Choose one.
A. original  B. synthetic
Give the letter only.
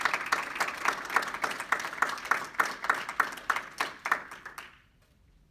A